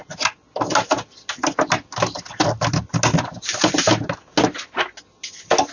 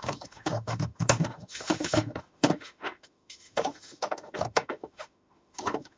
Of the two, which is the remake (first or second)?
second